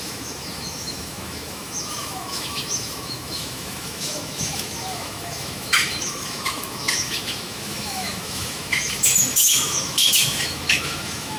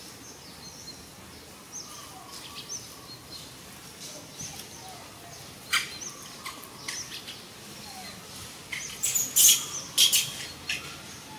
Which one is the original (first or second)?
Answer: second